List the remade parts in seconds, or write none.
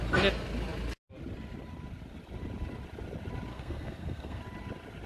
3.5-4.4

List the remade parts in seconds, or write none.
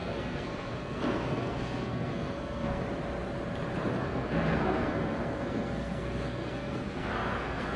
0.0-2.8; 3.9-7.8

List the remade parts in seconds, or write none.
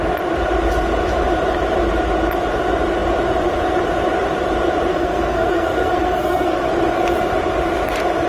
4.9-6.7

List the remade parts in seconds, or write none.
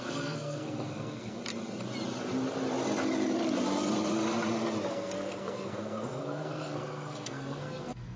0.0-1.4; 4.9-8.2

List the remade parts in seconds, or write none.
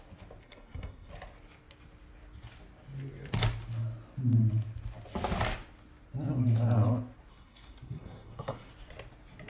0.4-1.1; 7.3-8.7